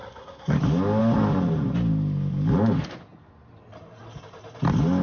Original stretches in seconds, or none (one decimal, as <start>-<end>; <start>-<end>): 0.6-5.0